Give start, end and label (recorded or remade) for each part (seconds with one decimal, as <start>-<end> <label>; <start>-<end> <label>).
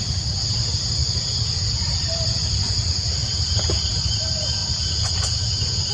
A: 0.0-5.9 recorded